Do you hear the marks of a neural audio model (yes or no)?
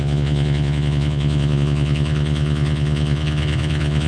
yes